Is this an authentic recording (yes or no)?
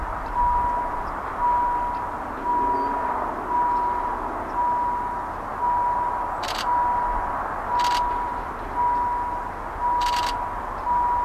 yes